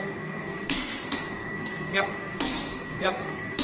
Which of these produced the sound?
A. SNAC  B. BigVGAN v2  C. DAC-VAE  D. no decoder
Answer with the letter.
A